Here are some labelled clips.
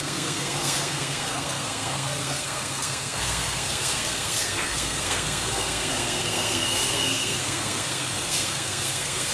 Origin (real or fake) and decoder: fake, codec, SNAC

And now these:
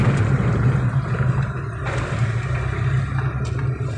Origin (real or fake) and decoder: real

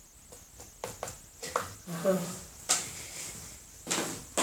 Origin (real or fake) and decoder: real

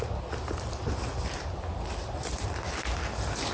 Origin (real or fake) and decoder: real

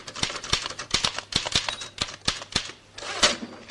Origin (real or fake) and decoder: real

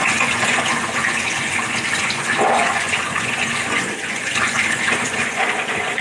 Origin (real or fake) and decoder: fake, vocoder, Vocos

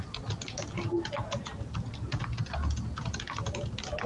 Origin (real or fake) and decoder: real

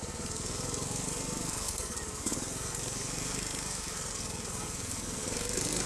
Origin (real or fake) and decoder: fake, codec, SNAC